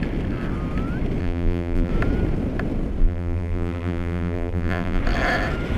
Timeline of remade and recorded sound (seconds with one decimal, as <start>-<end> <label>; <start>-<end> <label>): 0.0-1.2 recorded; 1.2-1.9 remade; 1.9-3.0 recorded; 3.0-5.0 remade; 5.0-5.8 recorded